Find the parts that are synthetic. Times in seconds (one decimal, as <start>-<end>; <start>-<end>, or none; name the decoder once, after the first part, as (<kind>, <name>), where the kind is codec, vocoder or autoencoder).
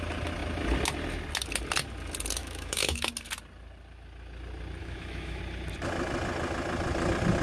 2.4-3.1 (autoencoder, DAC-VAE); 4.8-5.4